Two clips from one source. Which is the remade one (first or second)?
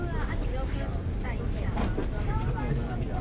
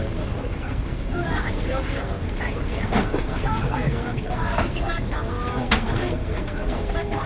second